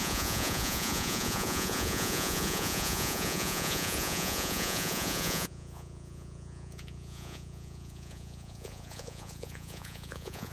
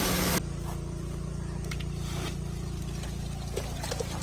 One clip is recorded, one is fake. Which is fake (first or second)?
first